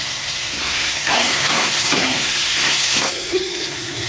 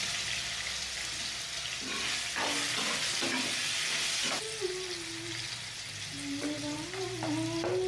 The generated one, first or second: first